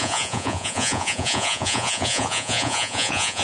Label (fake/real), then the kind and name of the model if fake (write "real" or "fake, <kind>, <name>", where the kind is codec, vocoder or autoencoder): fake, vocoder, Vocos